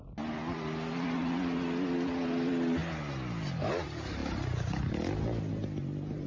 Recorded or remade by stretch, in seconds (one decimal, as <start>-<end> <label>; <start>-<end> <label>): 0.0-6.3 recorded

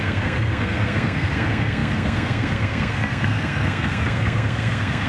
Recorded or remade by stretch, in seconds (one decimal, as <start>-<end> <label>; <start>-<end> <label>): 0.0-5.1 remade

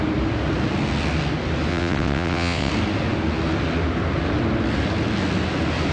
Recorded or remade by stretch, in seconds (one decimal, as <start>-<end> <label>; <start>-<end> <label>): 0.0-1.7 recorded; 1.7-2.7 remade; 2.7-5.9 recorded

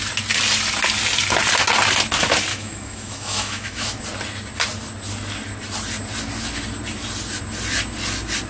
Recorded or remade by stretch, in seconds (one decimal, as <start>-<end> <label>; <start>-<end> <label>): 0.0-2.5 recorded; 2.5-4.0 remade; 4.0-8.5 recorded

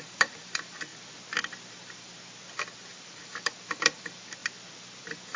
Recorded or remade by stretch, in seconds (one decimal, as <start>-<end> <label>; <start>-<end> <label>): 0.0-0.9 remade; 0.9-1.7 recorded; 1.7-2.1 remade; 2.1-2.9 recorded; 2.9-4.4 remade; 4.4-5.0 recorded; 5.0-5.4 remade

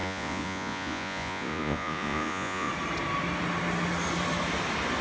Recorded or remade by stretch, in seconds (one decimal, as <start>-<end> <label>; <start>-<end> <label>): 0.0-2.7 remade; 2.7-5.0 recorded

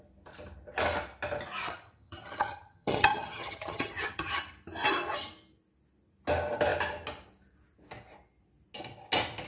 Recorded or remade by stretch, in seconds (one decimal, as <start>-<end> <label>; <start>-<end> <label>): 0.0-1.6 recorded; 1.6-4.4 remade; 4.4-9.5 recorded

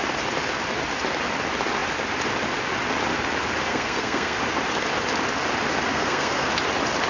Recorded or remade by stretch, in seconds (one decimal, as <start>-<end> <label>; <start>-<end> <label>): 0.0-3.7 recorded; 3.7-4.4 remade; 4.4-5.9 recorded; 5.9-6.5 remade; 6.5-7.1 recorded